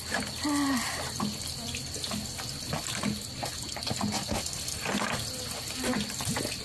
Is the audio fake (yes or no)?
no